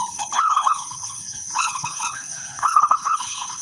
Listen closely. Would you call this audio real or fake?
fake